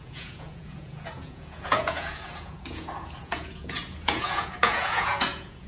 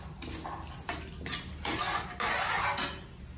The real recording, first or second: second